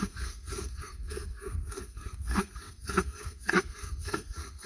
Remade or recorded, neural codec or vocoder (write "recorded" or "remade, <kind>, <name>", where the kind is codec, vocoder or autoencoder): remade, codec, SNAC